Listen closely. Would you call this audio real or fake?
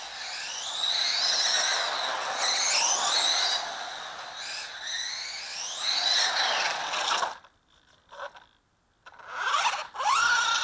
real